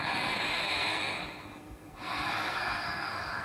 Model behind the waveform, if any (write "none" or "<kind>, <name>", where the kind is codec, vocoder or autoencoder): codec, SNAC